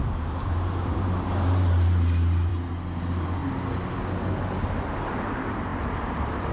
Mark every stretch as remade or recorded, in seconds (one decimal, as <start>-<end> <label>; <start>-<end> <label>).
0.0-2.5 remade; 2.5-3.0 recorded; 3.0-3.4 remade; 3.4-5.1 recorded; 5.1-6.5 remade